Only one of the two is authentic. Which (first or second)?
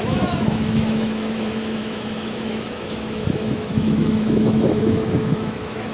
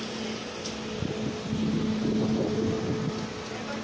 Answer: second